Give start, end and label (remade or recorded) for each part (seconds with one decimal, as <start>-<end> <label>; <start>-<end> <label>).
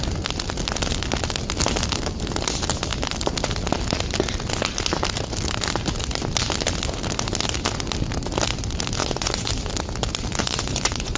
0.0-9.0 recorded; 9.0-9.5 remade; 9.5-10.3 recorded; 10.3-11.2 remade